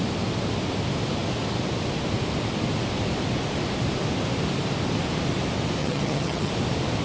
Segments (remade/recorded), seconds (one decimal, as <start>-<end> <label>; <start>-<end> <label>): 0.0-5.8 recorded; 5.8-6.5 remade; 6.5-7.0 recorded